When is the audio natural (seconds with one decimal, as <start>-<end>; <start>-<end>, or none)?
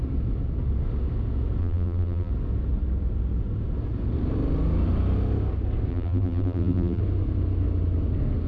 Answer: 0.0-1.6; 2.3-5.9; 7.0-8.5